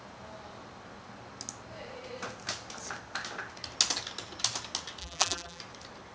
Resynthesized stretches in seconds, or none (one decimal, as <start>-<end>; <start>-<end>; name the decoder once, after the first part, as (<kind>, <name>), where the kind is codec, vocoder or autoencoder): 5.0-5.6 (vocoder, BigVGAN v2)